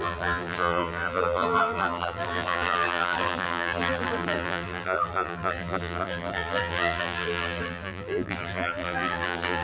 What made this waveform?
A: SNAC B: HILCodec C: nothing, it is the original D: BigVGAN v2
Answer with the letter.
D